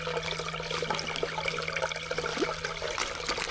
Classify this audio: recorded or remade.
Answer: recorded